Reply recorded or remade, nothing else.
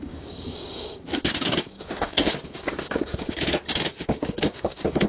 remade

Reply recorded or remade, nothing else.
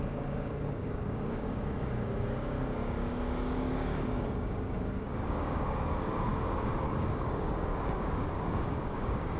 remade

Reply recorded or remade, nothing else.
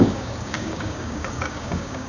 remade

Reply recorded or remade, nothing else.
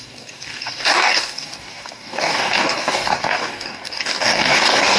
remade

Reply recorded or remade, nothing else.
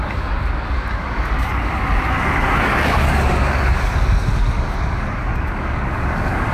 remade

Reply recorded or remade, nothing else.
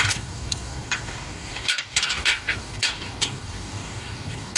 remade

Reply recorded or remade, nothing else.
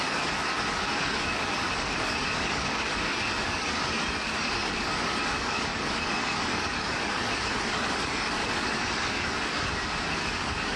remade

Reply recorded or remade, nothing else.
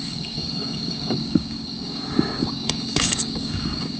remade